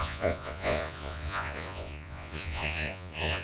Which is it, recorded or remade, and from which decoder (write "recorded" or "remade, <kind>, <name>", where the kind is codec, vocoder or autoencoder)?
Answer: remade, vocoder, Vocos